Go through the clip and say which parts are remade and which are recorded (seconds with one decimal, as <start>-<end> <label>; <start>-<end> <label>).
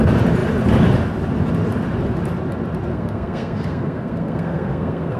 0.0-2.9 recorded; 2.9-5.2 remade